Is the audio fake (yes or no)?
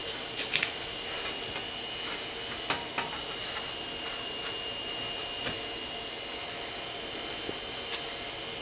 no